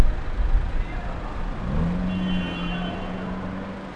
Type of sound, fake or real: real